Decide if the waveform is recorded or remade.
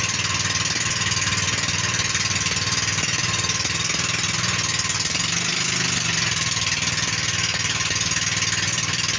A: recorded